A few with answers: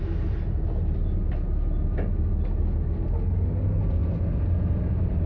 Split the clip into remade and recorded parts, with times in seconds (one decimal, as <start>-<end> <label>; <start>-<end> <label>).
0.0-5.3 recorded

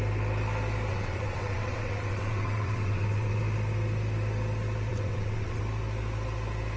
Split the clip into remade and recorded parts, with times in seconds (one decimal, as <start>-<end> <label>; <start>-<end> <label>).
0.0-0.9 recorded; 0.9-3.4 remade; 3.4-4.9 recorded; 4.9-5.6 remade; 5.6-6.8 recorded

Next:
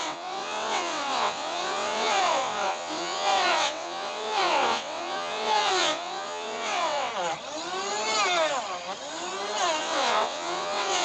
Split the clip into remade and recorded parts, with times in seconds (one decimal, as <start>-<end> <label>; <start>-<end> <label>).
0.0-7.1 remade; 7.1-9.8 recorded; 9.8-11.0 remade